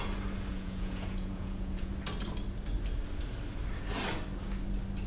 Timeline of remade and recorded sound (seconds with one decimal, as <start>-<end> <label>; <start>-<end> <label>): 0.0-0.5 recorded; 0.5-1.9 remade; 1.9-5.1 recorded